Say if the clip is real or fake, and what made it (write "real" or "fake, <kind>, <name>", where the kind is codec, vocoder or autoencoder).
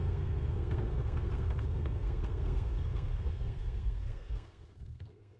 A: fake, codec, SNAC